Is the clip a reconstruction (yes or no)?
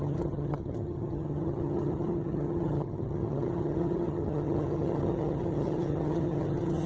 yes